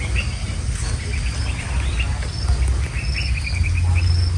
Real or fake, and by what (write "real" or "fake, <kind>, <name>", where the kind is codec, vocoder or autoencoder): real